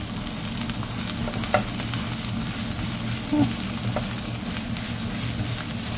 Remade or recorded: recorded